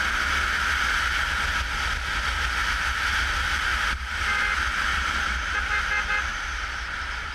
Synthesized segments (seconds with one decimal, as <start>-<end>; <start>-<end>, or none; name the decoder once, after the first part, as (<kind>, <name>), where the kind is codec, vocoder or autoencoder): 3.7-4.4 (vocoder, BigVGAN v2); 4.9-5.6; 6.3-6.8